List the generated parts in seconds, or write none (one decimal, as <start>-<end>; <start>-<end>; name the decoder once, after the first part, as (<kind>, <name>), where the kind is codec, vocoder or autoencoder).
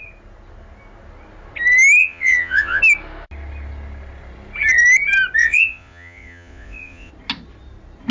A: 2.0-2.8 (vocoder, Vocos); 5.4-7.1